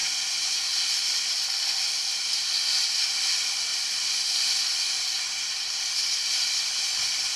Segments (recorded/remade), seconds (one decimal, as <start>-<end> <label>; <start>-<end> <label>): 0.0-7.4 recorded